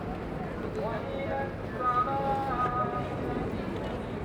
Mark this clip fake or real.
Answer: real